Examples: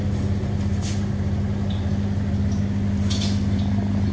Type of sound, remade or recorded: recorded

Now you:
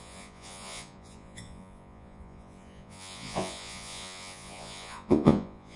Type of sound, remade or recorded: remade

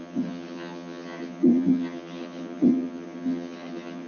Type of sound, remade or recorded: remade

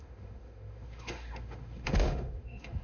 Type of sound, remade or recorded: remade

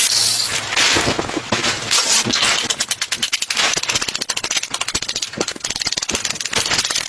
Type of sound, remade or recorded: recorded